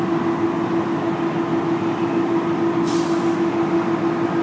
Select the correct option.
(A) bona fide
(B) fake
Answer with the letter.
A